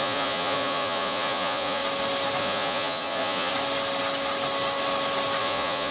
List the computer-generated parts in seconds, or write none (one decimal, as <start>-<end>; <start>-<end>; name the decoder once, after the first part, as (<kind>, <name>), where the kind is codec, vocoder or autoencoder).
0.0-1.8 (vocoder, Vocos); 2.4-3.5; 5.4-5.9